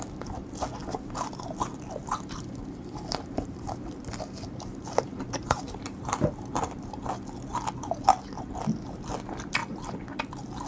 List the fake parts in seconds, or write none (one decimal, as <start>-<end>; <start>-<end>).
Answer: 2.0-7.0

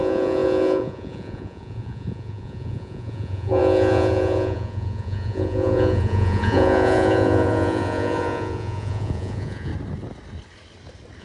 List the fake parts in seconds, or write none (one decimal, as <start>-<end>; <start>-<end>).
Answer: 0.0-9.7

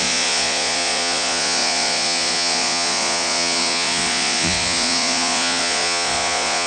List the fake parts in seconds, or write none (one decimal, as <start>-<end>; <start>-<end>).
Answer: 0.0-6.7

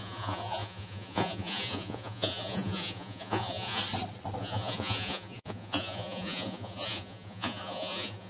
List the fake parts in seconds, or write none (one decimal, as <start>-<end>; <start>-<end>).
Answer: 0.0-3.8; 4.4-8.3

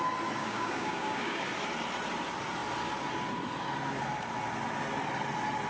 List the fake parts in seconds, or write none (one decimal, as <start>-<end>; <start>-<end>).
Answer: 0.4-1.4

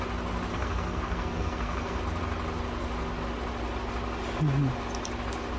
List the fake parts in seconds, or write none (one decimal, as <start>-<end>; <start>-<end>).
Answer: 0.5-2.0

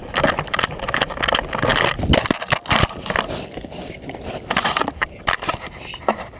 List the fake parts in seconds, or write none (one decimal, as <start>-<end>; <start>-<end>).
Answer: none